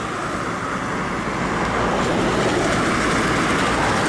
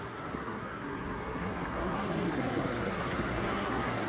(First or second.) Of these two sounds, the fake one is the second